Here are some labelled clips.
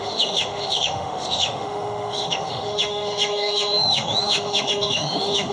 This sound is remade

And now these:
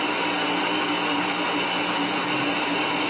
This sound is recorded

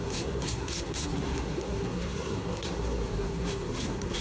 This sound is remade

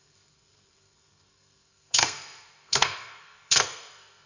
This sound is remade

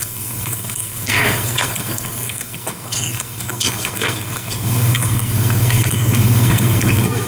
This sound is remade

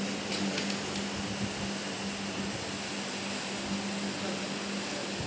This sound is recorded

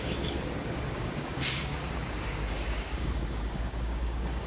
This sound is remade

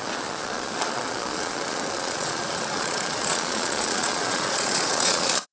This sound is remade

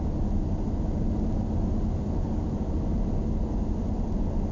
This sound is recorded